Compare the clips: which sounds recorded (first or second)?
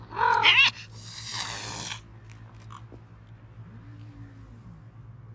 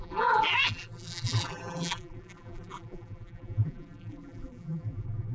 first